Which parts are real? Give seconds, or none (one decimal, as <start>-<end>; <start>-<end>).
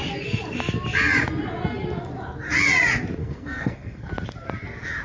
0.0-3.2; 4.1-5.0